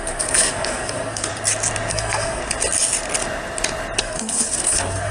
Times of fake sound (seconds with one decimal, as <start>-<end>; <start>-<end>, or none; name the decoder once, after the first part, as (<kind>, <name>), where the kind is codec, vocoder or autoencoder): 0.0-1.3 (codec, SNAC); 1.9-2.4; 4.0-5.1